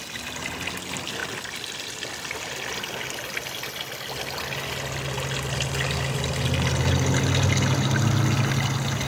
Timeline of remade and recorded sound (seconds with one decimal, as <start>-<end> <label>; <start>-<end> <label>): 0.0-9.1 recorded